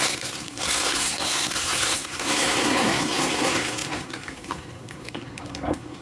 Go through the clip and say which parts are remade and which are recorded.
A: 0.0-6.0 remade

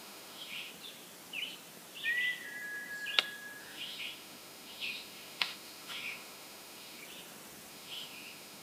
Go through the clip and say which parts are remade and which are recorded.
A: 0.0-0.7 remade; 0.7-3.6 recorded; 3.6-7.0 remade; 7.0-7.7 recorded; 7.7-8.6 remade

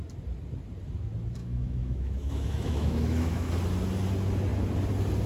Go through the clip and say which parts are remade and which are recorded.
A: 0.0-1.4 recorded; 1.4-3.5 remade; 3.5-5.3 recorded

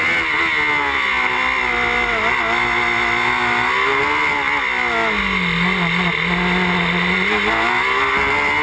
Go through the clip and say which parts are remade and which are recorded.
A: 0.0-8.6 recorded

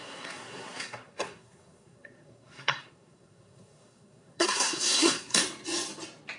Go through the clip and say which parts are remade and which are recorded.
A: 0.0-5.4 remade; 5.4-6.4 recorded

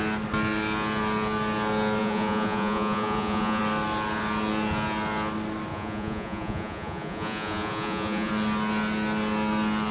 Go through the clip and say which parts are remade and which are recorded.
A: 0.0-2.0 recorded; 2.0-3.6 remade; 3.6-5.7 recorded; 5.7-8.3 remade; 8.3-9.9 recorded

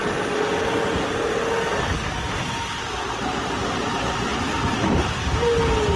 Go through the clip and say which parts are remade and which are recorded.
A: 0.0-6.0 recorded

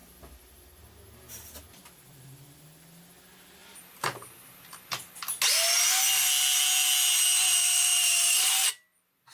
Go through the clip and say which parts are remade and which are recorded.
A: 0.0-0.6 remade; 0.6-3.6 recorded; 3.6-5.1 remade; 5.1-7.5 recorded; 7.5-8.7 remade; 8.7-9.3 recorded